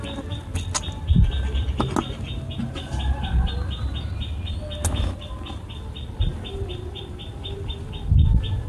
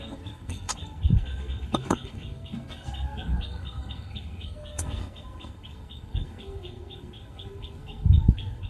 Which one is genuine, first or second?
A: first